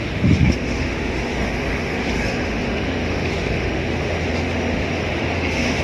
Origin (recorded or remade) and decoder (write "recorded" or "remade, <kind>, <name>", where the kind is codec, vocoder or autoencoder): remade, autoencoder, DAC-VAE